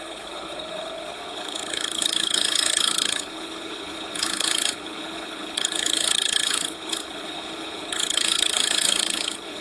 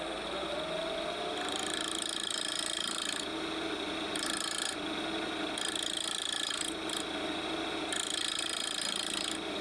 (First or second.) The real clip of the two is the second